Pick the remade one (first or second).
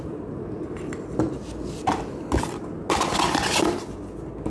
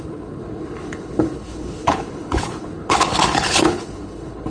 second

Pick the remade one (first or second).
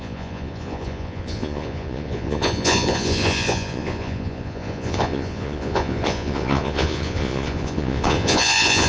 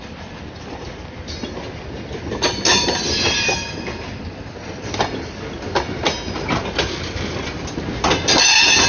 first